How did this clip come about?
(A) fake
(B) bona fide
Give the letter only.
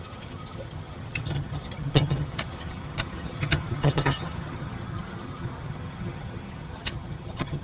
A